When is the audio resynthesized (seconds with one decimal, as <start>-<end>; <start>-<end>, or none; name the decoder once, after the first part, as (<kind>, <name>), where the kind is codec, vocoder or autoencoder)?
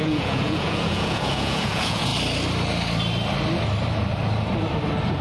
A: 0.0-2.1 (vocoder, Vocos)